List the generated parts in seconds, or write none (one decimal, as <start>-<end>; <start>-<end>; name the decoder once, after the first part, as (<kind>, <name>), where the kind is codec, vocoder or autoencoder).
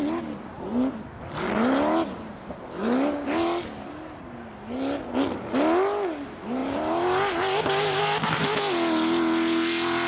none